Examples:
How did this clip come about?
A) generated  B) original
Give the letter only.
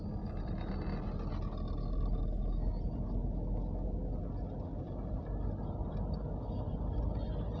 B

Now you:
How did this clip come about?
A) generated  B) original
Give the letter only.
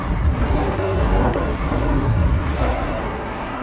A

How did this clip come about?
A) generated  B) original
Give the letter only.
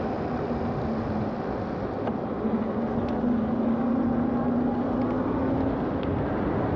B